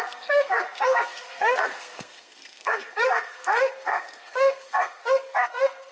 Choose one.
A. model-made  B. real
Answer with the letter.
A